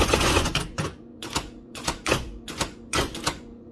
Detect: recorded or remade remade